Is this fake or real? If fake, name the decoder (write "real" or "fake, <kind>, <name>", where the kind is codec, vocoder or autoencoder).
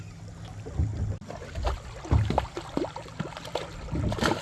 real